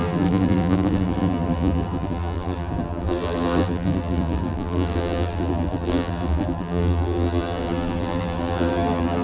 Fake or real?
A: fake